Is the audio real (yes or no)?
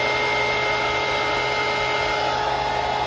yes